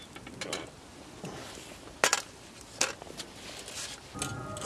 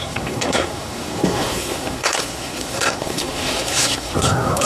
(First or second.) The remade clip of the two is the second